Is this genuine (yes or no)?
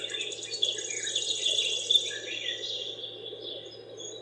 yes